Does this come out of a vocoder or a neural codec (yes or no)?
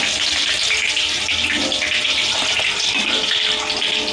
no